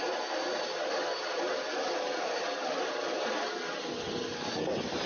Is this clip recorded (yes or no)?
yes